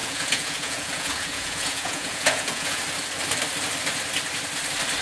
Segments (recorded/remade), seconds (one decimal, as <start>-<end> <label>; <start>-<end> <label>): 0.0-2.8 remade; 2.8-5.0 recorded